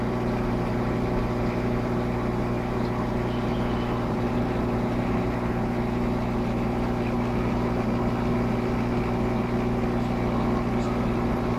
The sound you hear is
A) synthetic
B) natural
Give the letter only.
B